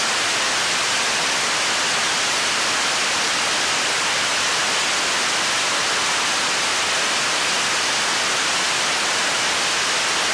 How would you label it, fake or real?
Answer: real